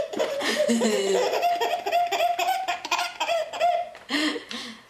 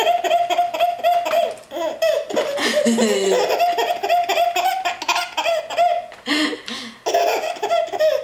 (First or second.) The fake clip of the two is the first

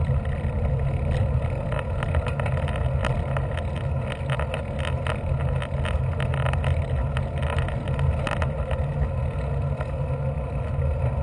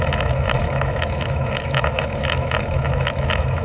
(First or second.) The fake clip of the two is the second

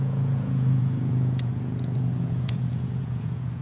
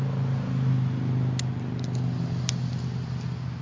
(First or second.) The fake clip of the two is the first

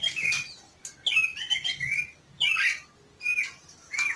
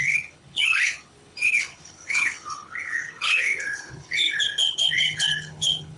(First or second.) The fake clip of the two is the second